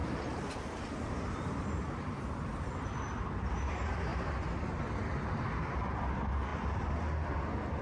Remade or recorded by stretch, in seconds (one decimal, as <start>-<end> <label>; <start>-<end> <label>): 0.0-3.1 remade; 3.1-7.8 recorded